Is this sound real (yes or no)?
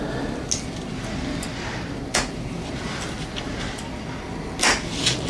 yes